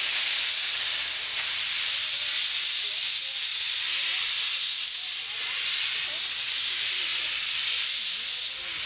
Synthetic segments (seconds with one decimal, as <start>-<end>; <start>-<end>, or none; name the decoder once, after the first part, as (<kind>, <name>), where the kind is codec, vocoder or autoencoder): 3.5-4.2 (vocoder, BigVGAN v2); 7.1-8.0